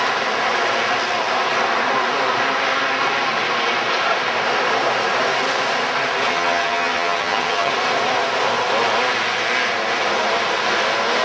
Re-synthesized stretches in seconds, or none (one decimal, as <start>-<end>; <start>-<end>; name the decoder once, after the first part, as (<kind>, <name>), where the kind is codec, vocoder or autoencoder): 6.3-7.7 (vocoder, HiFi-GAN)